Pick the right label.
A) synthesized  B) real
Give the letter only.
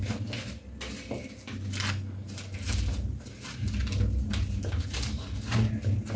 B